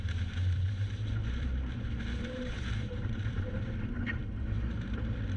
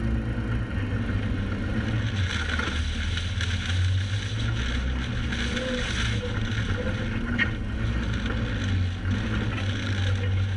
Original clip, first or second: second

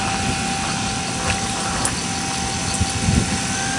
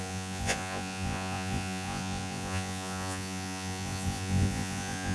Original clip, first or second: first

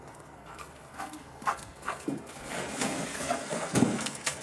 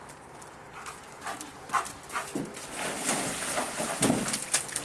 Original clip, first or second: second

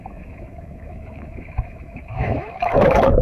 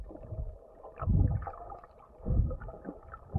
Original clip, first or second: second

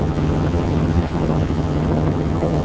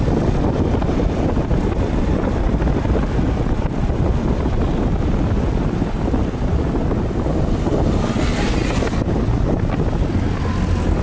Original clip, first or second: second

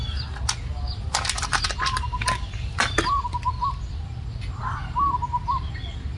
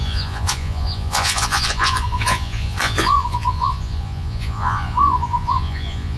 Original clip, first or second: first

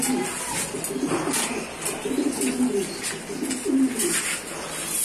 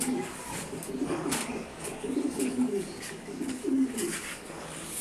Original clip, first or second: first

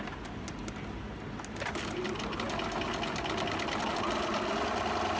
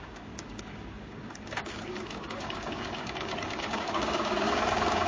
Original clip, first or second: first